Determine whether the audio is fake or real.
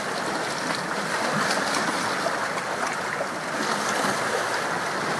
real